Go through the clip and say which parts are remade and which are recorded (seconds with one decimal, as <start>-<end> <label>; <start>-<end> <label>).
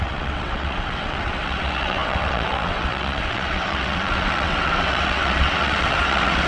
0.0-6.5 remade